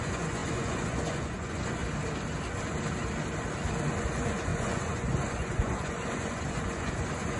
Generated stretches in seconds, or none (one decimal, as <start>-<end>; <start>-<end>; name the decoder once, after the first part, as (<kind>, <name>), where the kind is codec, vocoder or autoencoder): 0.0-1.8 (vocoder, Vocos); 4.0-7.4